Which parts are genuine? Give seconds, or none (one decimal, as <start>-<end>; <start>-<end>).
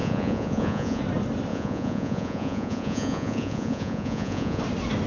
1.0-1.5; 4.6-5.1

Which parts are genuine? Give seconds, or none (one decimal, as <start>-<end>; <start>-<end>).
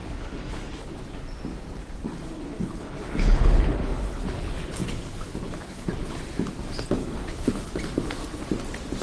0.9-1.8; 5.9-7.0; 7.7-9.0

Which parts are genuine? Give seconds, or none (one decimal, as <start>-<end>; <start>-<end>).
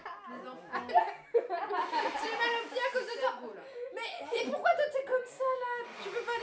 0.0-6.4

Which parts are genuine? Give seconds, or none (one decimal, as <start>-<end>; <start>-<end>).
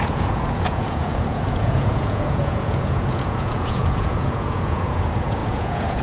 none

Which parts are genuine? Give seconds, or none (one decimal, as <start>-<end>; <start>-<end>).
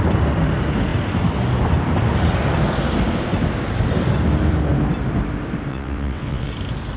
0.0-5.7; 6.5-7.0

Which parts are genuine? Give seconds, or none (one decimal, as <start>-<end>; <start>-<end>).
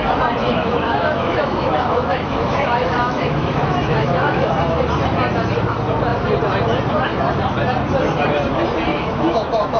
0.0-0.4; 4.5-8.9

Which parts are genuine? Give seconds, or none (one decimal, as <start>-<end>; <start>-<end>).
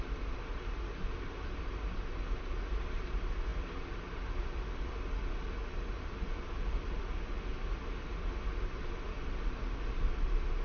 0.0-10.6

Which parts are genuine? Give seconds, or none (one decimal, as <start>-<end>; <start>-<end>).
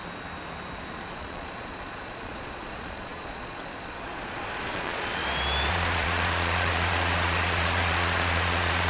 0.0-1.1; 5.2-5.7